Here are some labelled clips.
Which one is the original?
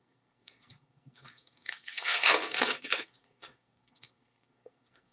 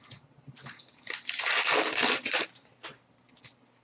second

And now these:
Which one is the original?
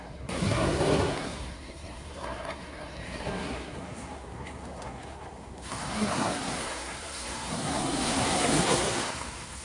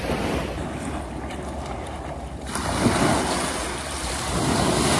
second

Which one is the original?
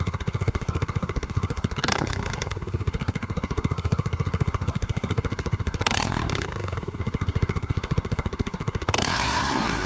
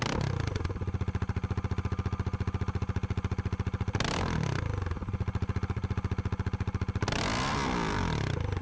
second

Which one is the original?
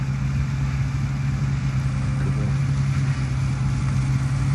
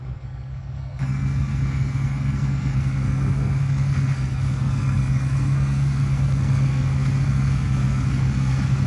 first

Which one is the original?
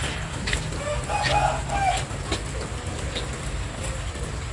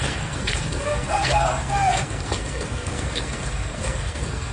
first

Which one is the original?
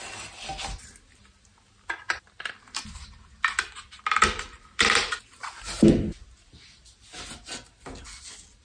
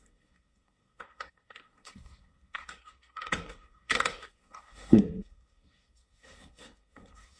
first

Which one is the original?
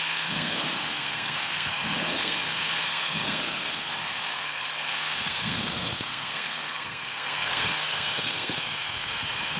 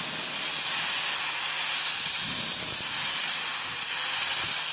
second